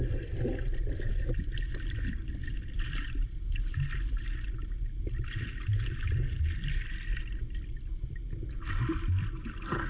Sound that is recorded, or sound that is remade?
recorded